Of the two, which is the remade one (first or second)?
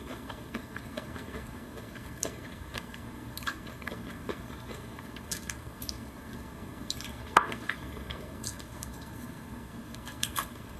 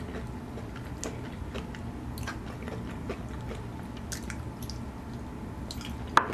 first